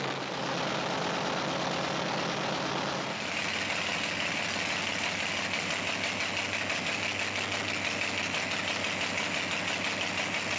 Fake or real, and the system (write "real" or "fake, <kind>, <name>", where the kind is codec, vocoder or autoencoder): real